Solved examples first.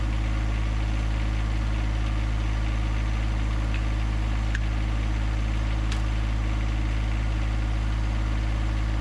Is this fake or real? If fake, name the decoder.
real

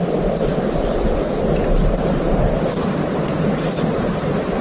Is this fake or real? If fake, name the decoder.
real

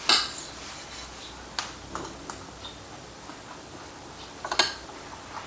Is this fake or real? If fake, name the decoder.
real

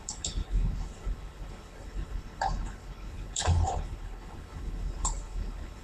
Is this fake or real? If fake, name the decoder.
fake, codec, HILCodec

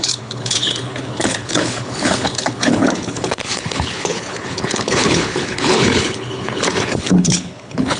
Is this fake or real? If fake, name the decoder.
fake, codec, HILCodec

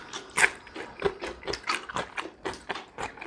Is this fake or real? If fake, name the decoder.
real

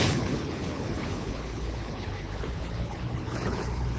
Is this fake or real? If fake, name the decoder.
fake, codec, HILCodec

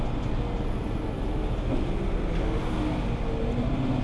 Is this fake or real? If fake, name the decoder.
real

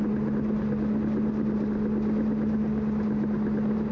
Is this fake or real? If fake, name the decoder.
real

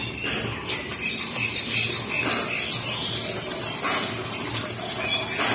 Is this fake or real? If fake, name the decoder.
real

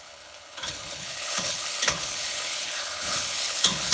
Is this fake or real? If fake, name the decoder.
fake, codec, HILCodec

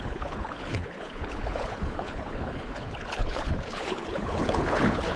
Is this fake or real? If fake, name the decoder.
fake, codec, HILCodec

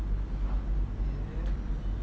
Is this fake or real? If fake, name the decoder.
real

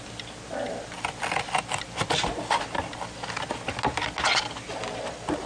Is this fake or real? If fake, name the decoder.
real